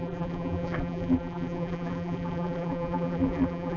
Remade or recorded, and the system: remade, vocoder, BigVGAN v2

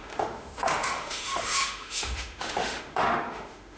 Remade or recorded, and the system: remade, autoencoder, DAC-VAE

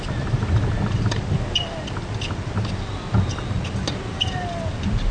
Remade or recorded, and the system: recorded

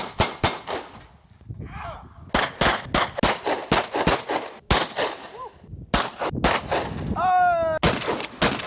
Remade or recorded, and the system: recorded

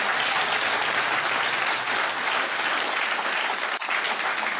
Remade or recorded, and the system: recorded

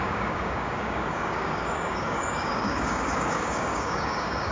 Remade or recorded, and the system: remade, codec, DAC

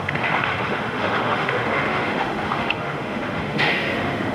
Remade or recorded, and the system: remade, autoencoder, DAC-VAE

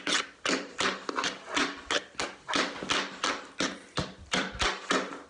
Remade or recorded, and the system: recorded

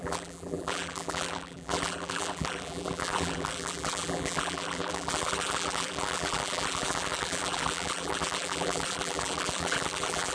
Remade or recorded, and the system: remade, vocoder, BigVGAN v2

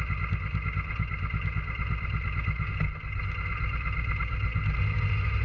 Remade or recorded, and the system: recorded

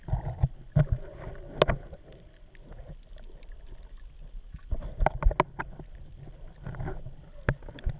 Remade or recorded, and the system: recorded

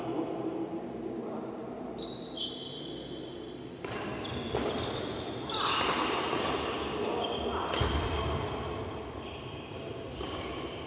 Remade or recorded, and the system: recorded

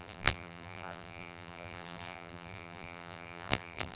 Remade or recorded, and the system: remade, vocoder, BigVGAN v2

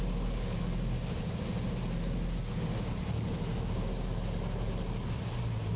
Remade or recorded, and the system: recorded